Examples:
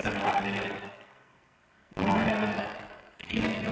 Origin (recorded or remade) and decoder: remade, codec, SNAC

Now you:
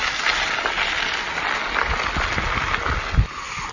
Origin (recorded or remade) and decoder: recorded